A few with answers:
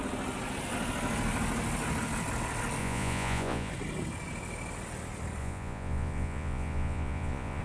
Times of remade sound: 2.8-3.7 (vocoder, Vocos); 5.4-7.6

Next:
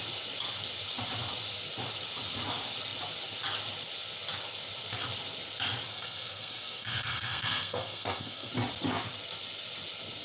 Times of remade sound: 5.9-8.5 (codec, SNAC)

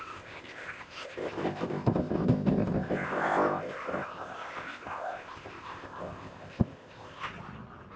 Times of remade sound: 0.0-7.3 (codec, ZipCodec)

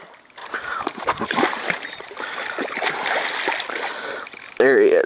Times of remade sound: 0.4-3.2 (vocoder, BigVGAN v2)

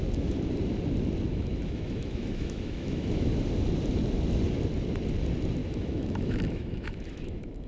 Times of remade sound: 1.3-3.3 (autoencoder, DAC-VAE); 5.6-7.7

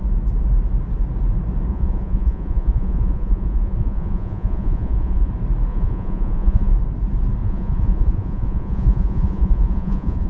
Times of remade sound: 1.7-5.3 (vocoder, Vocos); 5.7-6.7; 7.4-10.3